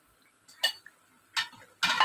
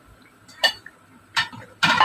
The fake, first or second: second